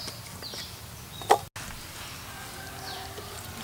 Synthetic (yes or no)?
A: no